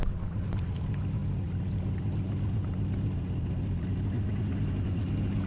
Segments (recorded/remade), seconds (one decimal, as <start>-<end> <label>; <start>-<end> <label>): 0.0-5.5 recorded